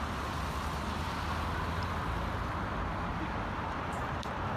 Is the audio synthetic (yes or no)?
yes